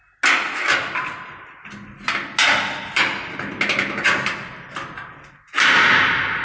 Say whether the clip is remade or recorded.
recorded